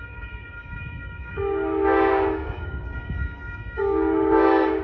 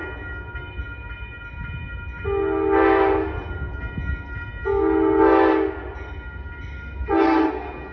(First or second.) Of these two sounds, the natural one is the second